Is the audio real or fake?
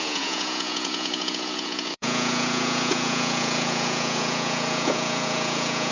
fake